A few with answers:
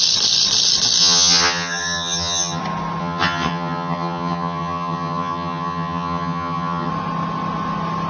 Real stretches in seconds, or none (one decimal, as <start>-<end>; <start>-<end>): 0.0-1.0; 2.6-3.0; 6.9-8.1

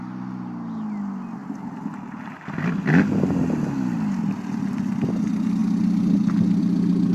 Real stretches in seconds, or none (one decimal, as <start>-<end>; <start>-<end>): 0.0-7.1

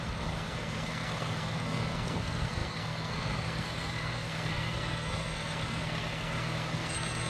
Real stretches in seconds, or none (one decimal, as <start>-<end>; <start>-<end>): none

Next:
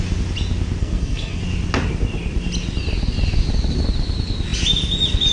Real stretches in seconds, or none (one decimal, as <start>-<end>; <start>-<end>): 0.0-0.8; 1.4-5.3